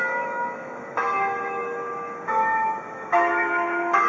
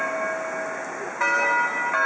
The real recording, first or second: second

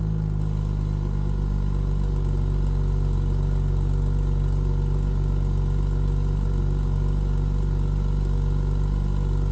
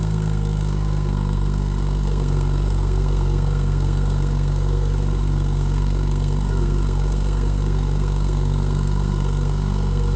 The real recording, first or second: first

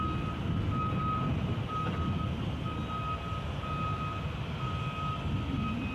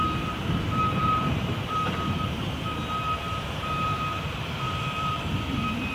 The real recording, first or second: first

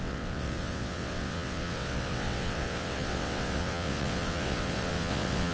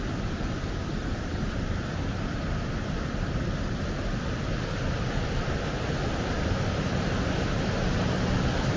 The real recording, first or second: second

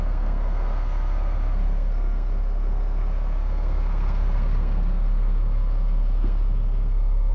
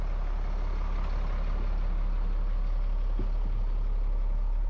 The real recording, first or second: second